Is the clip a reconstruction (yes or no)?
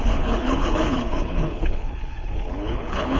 yes